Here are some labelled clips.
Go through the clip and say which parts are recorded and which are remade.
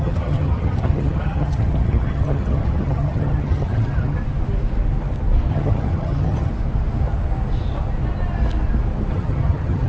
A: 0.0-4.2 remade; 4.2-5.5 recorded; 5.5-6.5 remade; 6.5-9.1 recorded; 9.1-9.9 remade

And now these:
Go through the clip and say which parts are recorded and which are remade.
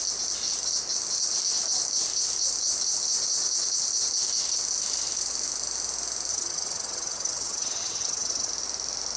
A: 0.0-6.3 recorded; 6.3-8.5 remade; 8.5-9.2 recorded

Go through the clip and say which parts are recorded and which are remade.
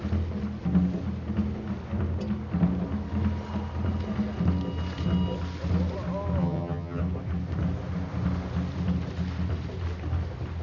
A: 0.0-6.4 recorded; 6.4-7.0 remade; 7.0-10.6 recorded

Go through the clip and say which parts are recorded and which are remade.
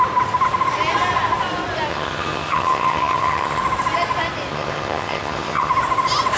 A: 0.0-1.9 recorded; 1.9-3.6 remade; 3.6-4.5 recorded; 4.5-5.7 remade; 5.7-6.4 recorded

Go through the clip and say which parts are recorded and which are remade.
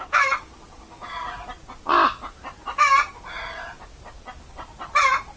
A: 0.0-5.4 recorded